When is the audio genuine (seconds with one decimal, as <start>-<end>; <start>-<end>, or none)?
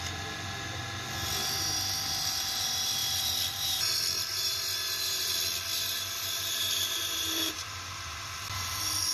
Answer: 0.0-3.0; 8.2-9.1